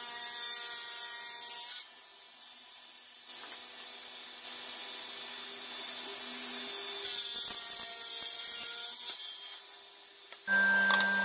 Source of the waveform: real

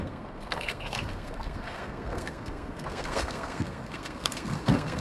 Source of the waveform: fake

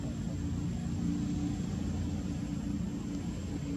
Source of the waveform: real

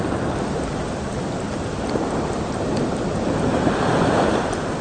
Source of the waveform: real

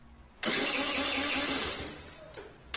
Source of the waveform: real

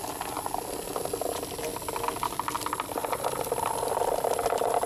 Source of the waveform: real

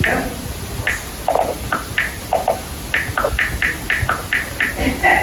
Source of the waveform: real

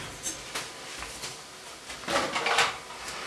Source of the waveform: real